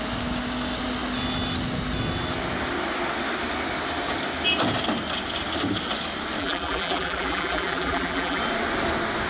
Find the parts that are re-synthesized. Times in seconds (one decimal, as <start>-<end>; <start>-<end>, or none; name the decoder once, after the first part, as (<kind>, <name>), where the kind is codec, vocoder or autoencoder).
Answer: 6.4-8.4 (vocoder, BigVGAN v2)